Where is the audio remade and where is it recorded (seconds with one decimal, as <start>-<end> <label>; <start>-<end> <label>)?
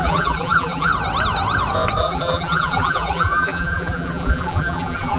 0.0-0.9 remade; 0.9-2.0 recorded; 2.0-5.2 remade